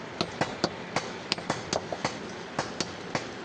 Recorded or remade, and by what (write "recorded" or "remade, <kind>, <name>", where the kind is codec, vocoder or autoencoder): recorded